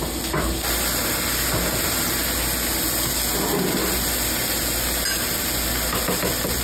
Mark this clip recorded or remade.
recorded